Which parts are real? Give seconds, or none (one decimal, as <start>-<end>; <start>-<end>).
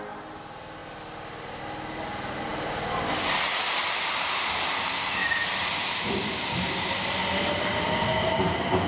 0.0-8.9